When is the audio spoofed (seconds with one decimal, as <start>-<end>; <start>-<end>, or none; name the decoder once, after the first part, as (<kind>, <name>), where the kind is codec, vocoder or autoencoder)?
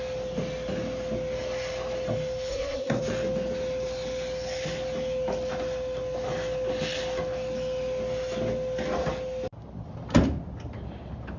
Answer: 2.5-3.0 (codec, SNAC)